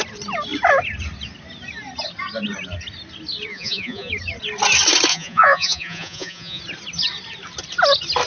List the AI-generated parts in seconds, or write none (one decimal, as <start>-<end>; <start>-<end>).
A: 3.5-4.1; 5.1-6.6